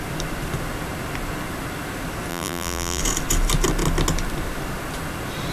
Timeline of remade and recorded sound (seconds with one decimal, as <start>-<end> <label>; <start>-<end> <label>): 0.0-2.3 recorded; 2.3-3.0 remade; 3.0-5.5 recorded